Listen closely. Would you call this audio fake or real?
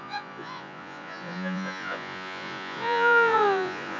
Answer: fake